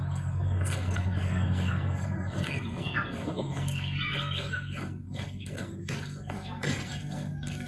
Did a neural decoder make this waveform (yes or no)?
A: yes